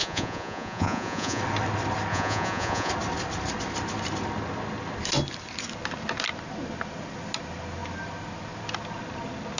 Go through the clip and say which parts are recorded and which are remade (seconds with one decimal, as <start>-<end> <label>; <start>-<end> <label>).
0.0-1.4 remade; 1.4-2.1 recorded; 2.1-2.9 remade; 2.9-9.6 recorded